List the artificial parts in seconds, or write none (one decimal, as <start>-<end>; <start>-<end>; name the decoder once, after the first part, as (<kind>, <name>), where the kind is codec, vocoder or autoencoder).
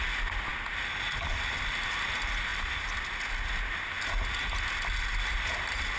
none